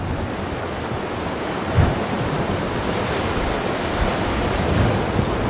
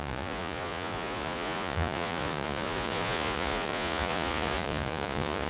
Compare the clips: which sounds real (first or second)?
first